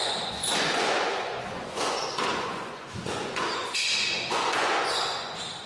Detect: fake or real fake